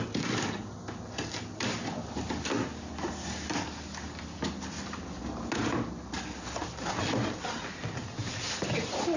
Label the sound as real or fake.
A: real